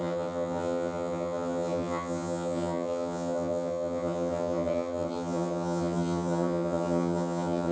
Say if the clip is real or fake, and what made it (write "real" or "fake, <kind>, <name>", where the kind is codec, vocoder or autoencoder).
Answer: fake, vocoder, HiFi-GAN